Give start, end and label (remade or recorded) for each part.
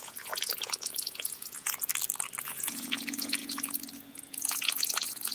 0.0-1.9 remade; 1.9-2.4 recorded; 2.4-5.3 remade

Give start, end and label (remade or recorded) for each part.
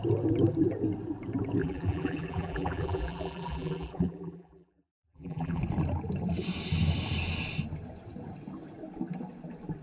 0.0-1.6 recorded; 1.6-5.6 remade; 5.6-9.8 recorded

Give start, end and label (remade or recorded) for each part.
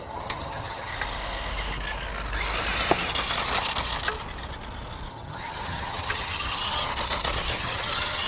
0.0-0.9 remade; 0.9-5.1 recorded; 5.1-6.9 remade; 6.9-7.5 recorded; 7.5-8.3 remade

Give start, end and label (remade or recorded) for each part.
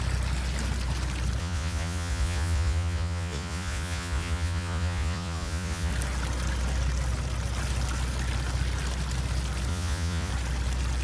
0.0-1.4 recorded; 1.4-5.9 remade; 5.9-9.7 recorded; 9.7-10.3 remade; 10.3-11.0 recorded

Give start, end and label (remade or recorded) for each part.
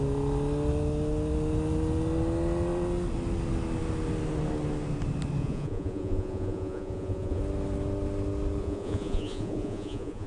0.0-5.4 recorded; 5.4-7.4 remade; 7.4-8.6 recorded; 8.6-10.3 remade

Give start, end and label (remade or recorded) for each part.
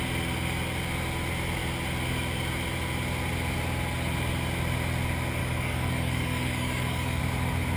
0.0-5.4 recorded; 5.4-7.2 remade; 7.2-7.8 recorded